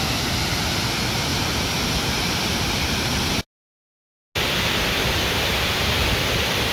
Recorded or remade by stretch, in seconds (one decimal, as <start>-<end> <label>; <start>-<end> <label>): 0.0-1.3 recorded; 1.3-3.2 remade; 3.2-6.7 recorded